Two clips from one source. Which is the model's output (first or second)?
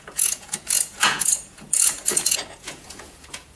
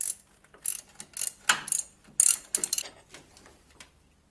first